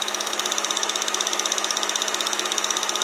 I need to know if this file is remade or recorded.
remade